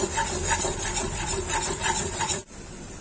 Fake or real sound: fake